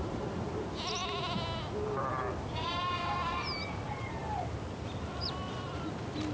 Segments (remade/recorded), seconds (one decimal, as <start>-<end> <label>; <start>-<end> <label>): 0.0-6.3 recorded